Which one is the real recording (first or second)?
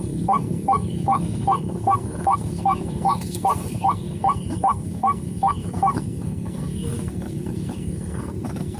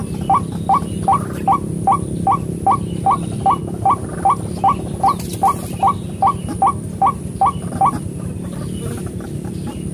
second